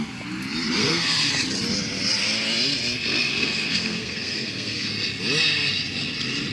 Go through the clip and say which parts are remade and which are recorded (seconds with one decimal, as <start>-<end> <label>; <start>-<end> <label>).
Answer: 0.0-0.8 recorded; 0.8-1.3 remade; 1.3-3.3 recorded; 3.3-4.9 remade; 4.9-6.5 recorded